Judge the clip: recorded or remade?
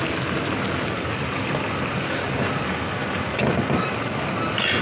recorded